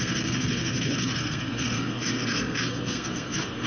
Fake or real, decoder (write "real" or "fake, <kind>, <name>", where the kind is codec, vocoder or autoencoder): fake, codec, SNAC